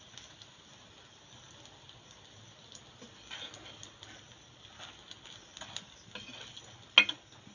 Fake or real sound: real